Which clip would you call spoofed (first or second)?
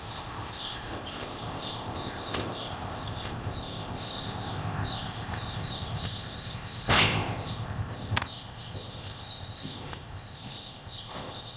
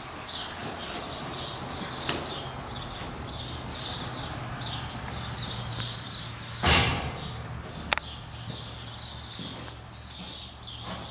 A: first